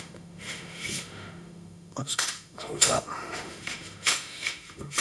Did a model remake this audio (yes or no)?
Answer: yes